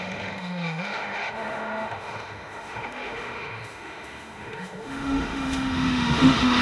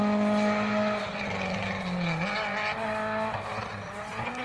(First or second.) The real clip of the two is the second